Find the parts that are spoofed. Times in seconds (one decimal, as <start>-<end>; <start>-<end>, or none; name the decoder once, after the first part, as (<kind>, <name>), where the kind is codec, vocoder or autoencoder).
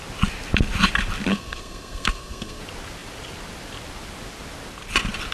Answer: 1.3-2.6 (codec, SNAC)